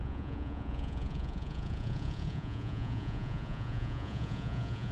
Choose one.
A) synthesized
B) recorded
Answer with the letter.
A